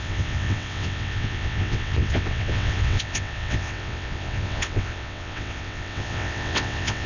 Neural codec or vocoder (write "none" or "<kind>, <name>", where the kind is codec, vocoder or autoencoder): vocoder, WaveNeXt